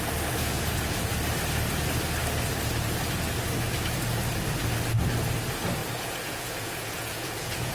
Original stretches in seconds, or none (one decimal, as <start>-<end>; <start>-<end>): 0.0-0.4; 1.2-5.8